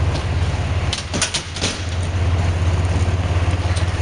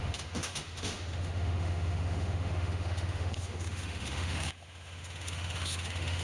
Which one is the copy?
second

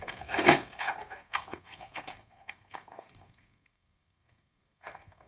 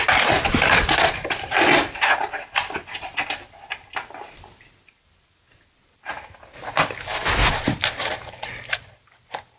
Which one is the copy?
first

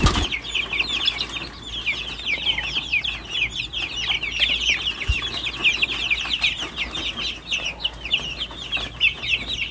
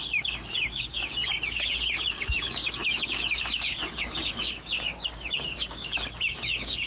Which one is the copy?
second